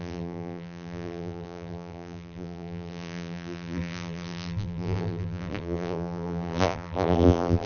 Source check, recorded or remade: remade